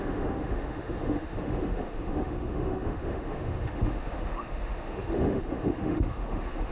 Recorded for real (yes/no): no